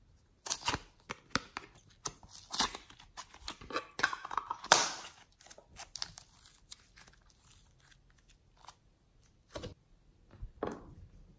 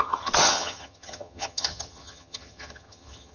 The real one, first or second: first